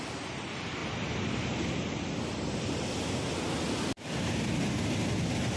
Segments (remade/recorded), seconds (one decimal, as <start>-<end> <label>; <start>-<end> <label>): 0.0-5.6 recorded